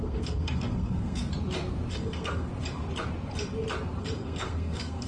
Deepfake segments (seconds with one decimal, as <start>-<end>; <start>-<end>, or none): 0.0-1.3; 1.9-2.5; 4.0-5.1